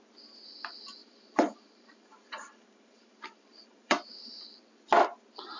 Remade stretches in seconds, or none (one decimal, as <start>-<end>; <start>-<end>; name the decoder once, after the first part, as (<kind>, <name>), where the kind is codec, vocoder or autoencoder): 1.0-4.4 (vocoder, BigVGAN v2)